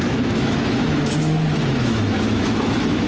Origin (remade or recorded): remade